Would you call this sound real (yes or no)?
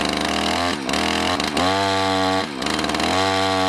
yes